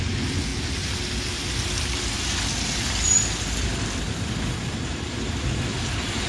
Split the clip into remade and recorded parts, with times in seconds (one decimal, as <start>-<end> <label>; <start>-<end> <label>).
0.0-6.3 recorded